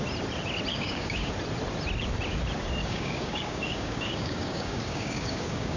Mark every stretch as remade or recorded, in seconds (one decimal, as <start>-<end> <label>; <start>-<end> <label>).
0.0-0.7 recorded; 0.7-1.3 remade; 1.3-2.8 recorded; 2.8-5.8 remade